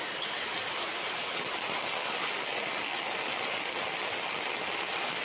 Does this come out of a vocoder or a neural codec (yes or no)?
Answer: no